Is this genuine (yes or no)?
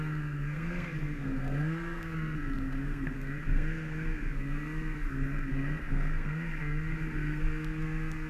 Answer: no